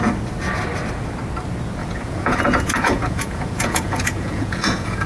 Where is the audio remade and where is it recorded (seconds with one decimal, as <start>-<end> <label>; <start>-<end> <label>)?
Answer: 0.0-1.8 recorded; 1.8-5.1 remade